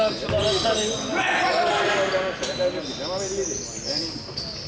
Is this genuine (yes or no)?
yes